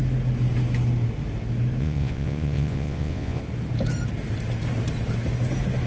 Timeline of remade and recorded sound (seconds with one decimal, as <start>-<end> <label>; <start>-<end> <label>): 0.0-1.8 recorded; 1.8-3.4 remade; 3.4-5.9 recorded